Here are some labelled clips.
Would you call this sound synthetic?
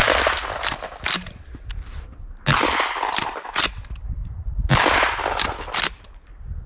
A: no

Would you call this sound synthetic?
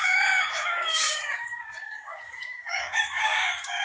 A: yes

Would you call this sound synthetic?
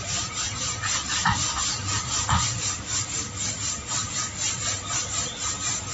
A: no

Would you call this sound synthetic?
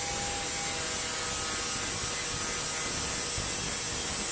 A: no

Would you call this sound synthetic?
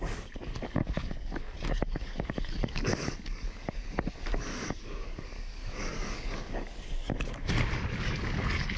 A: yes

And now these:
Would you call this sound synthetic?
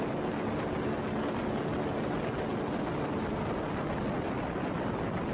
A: no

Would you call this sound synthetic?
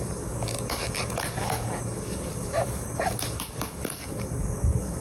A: yes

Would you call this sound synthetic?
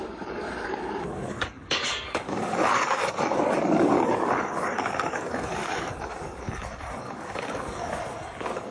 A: yes